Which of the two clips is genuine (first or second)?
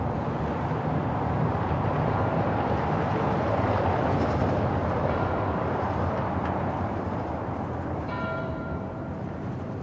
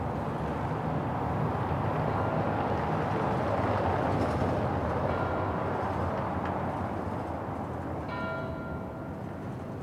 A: second